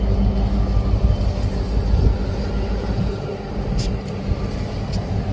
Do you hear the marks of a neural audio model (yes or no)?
no